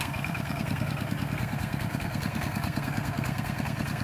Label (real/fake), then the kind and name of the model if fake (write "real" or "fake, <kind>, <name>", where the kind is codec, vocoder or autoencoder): fake, codec, SNAC